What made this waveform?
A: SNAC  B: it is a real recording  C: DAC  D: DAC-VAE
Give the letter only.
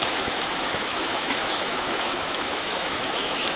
D